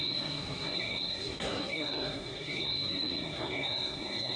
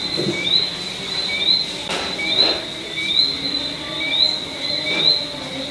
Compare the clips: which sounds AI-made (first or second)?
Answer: first